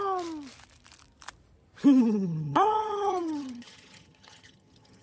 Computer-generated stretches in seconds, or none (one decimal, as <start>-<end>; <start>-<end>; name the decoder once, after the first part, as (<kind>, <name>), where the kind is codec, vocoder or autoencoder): 2.0-5.0 (vocoder, HiFi-GAN)